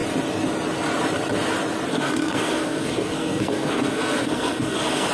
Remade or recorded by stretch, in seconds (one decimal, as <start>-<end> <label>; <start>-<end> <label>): 0.0-1.9 recorded; 1.9-5.1 remade